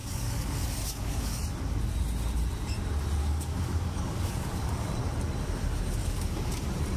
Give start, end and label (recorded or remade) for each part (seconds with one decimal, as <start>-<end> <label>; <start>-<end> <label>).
0.0-1.4 remade; 1.4-3.2 recorded; 3.2-4.9 remade; 4.9-6.0 recorded; 6.0-6.5 remade; 6.5-7.0 recorded